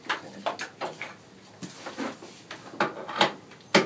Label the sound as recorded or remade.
recorded